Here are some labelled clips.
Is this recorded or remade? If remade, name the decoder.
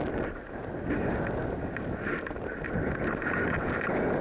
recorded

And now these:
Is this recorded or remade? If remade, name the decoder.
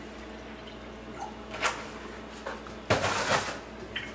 recorded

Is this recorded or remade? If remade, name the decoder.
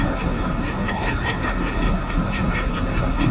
remade, codec, SNAC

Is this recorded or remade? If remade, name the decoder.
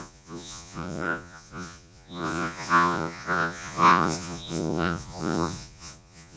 remade, vocoder, Vocos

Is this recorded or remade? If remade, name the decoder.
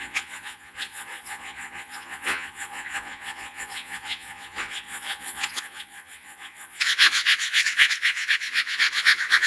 remade, vocoder, Vocos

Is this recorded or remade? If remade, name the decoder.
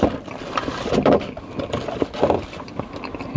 recorded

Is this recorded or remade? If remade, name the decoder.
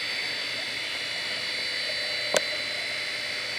recorded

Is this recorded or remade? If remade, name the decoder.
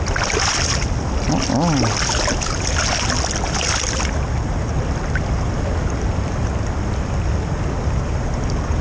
recorded